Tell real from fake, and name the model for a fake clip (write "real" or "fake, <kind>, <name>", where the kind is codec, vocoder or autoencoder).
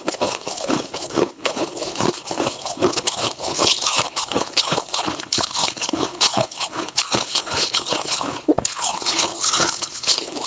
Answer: fake, codec, HILCodec